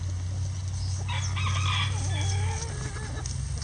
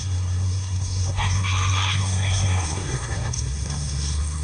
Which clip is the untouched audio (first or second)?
first